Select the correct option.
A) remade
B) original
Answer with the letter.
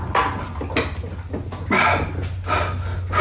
B